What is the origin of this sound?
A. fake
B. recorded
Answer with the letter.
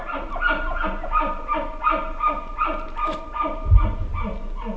A